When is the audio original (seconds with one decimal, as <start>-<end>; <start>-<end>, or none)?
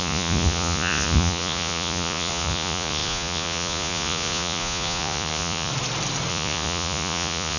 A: 5.7-6.3